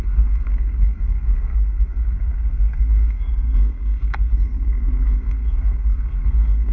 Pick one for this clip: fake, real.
fake